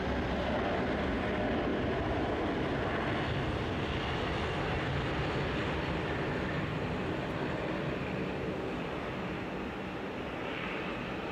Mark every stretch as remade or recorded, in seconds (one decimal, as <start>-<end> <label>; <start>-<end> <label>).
0.0-11.3 recorded